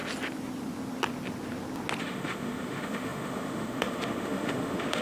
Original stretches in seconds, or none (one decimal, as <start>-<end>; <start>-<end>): 0.0-2.0